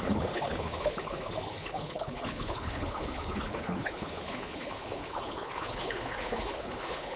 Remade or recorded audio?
remade